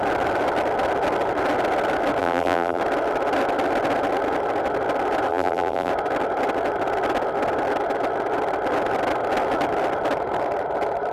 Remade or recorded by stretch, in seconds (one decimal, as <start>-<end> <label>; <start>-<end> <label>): 0.0-2.2 recorded; 2.2-2.8 remade; 2.8-5.3 recorded; 5.3-5.9 remade; 5.9-11.1 recorded